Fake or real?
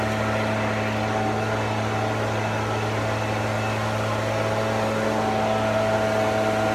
real